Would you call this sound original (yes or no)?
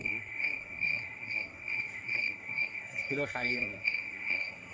no